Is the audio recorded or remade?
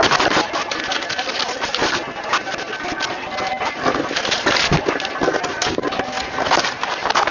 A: recorded